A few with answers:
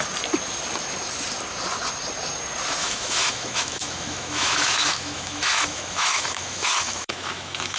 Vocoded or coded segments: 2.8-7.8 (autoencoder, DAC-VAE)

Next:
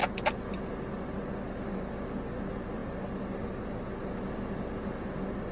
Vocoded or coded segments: none